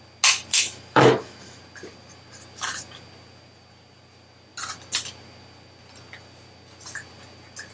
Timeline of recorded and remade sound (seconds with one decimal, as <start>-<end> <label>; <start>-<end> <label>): 0.0-0.5 recorded; 0.5-1.6 remade; 1.6-7.7 recorded

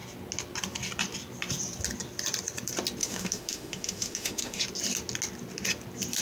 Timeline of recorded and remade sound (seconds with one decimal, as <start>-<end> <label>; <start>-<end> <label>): 0.0-3.0 recorded; 3.0-4.6 remade; 4.6-6.2 recorded

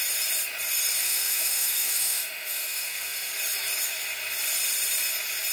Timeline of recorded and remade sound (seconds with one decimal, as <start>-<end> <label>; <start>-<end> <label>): 0.0-1.0 recorded; 1.0-3.3 remade; 3.3-5.5 recorded

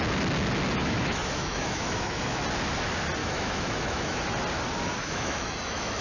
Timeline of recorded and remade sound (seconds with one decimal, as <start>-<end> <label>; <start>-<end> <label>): 0.0-0.8 recorded; 0.8-2.4 remade; 2.4-3.2 recorded; 3.2-4.2 remade; 4.2-5.0 recorded; 5.0-6.0 remade

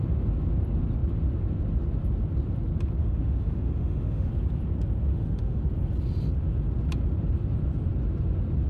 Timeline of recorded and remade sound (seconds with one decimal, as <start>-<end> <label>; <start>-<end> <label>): 0.0-3.0 recorded; 3.0-4.3 remade; 4.3-5.1 recorded; 5.1-5.6 remade; 5.6-8.7 recorded